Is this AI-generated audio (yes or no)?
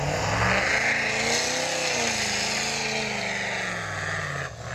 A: no